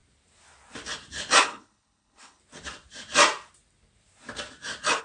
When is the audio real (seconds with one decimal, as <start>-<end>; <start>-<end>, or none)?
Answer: 0.0-1.4; 2.4-5.0